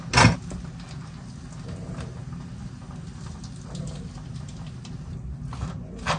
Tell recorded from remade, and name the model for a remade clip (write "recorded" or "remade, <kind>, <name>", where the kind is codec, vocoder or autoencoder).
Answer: recorded